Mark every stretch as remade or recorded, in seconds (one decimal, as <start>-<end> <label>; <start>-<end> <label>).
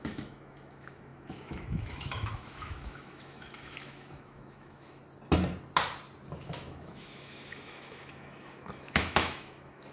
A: 0.0-5.0 remade; 5.0-6.4 recorded; 6.4-9.9 remade